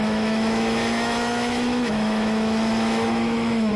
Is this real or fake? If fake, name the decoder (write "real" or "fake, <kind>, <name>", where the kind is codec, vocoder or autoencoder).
fake, autoencoder, DAC-VAE